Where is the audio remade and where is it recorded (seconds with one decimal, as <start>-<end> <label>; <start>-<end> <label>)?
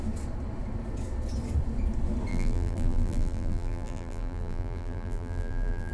0.0-2.3 recorded; 2.3-5.9 remade